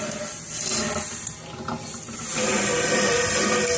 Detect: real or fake real